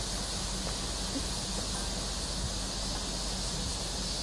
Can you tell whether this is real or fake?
real